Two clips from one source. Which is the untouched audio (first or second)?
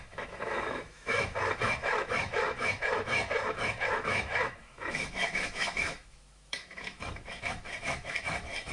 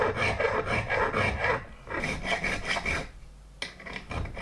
second